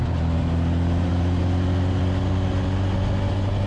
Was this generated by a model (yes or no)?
no